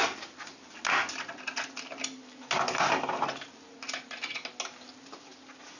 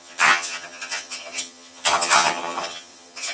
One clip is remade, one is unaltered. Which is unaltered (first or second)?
first